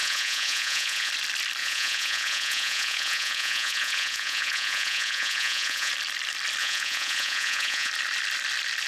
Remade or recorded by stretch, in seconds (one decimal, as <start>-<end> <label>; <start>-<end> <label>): 0.0-1.1 remade; 1.1-1.6 recorded; 1.6-5.9 remade; 5.9-6.6 recorded; 6.6-7.9 remade; 7.9-8.9 recorded